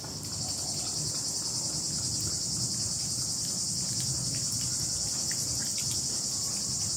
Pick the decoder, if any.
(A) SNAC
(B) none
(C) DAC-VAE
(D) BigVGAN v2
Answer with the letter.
B